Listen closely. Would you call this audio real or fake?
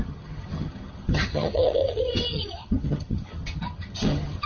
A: fake